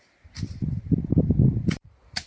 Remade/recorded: remade